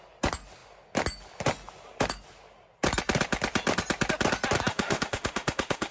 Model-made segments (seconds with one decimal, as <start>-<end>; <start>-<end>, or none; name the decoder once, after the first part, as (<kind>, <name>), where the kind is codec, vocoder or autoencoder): 4.7-5.9 (autoencoder, DAC-VAE)